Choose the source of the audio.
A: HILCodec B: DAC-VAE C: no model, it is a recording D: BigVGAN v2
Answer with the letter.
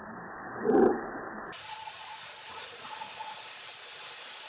D